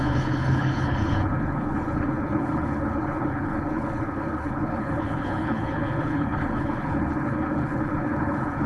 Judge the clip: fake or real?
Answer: fake